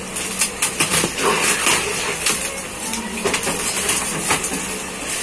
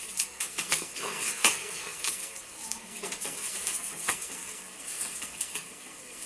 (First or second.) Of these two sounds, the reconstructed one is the second